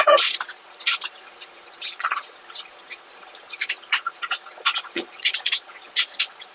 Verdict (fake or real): fake